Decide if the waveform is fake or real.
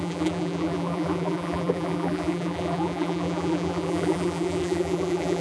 fake